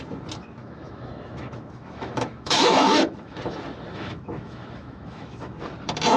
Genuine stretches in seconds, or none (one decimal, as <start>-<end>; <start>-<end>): 0.0-0.6; 3.4-3.9; 5.6-6.2